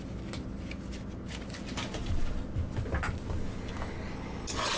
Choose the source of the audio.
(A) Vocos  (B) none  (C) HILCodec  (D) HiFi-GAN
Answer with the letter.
B